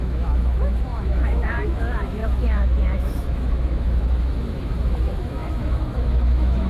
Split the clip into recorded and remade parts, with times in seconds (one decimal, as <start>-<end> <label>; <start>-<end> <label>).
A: 0.0-6.7 remade